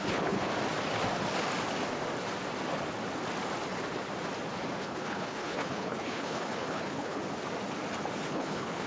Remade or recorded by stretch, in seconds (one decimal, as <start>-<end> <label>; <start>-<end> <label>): 0.0-0.5 remade; 0.5-4.8 recorded; 4.8-7.2 remade; 7.2-8.3 recorded; 8.3-8.9 remade